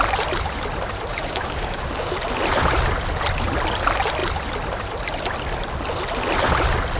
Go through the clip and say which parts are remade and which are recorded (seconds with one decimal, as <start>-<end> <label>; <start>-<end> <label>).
0.0-1.1 recorded; 1.1-2.1 remade; 2.1-7.0 recorded